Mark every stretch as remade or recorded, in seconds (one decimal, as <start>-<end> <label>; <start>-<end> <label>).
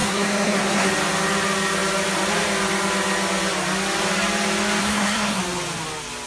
0.0-0.9 remade; 0.9-4.8 recorded; 4.8-5.4 remade; 5.4-6.3 recorded